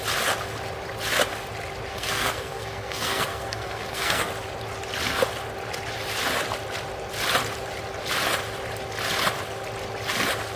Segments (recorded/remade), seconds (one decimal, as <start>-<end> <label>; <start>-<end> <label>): 0.0-1.9 recorded; 1.9-4.3 remade; 4.3-10.6 recorded